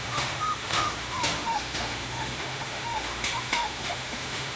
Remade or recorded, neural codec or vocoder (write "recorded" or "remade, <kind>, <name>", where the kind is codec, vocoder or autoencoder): remade, autoencoder, DAC-VAE